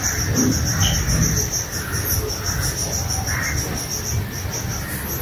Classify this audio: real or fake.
real